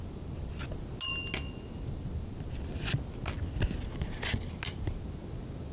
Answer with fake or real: real